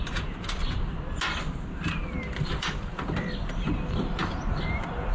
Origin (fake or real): real